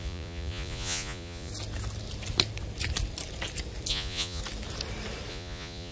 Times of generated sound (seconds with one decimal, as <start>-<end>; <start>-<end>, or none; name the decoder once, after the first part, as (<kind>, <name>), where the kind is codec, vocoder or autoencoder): 0.0-1.5 (vocoder, Vocos); 3.9-4.4; 5.3-5.9